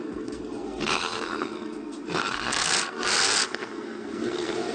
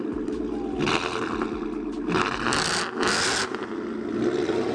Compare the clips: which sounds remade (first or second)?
first